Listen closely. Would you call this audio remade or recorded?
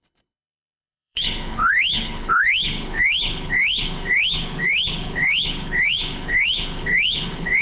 remade